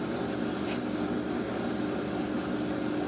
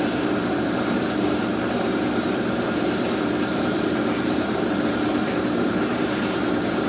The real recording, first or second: first